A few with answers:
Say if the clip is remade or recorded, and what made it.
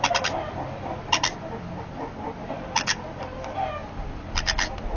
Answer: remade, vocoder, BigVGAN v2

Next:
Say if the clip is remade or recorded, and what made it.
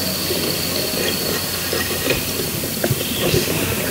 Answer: recorded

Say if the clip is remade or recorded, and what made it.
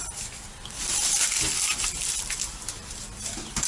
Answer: remade, vocoder, BigVGAN v2